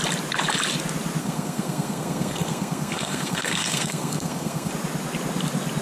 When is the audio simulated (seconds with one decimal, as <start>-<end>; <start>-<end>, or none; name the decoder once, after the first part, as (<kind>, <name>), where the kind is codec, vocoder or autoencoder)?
1.2-4.7 (codec, SNAC)